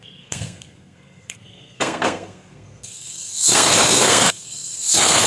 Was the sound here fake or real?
fake